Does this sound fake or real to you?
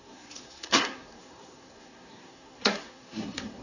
fake